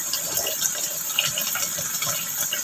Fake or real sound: real